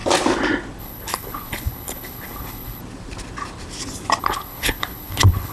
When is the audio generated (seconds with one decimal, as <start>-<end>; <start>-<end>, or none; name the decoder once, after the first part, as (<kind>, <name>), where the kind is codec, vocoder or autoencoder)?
0.8-2.8 (codec, HILCodec); 4.2-5.5